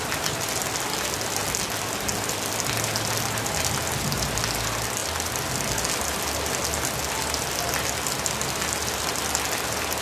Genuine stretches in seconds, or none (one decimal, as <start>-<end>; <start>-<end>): 0.0-10.0